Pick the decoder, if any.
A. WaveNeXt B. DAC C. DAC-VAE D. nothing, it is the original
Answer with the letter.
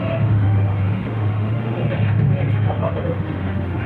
C